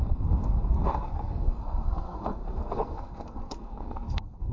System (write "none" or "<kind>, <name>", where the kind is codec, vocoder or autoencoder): codec, SNAC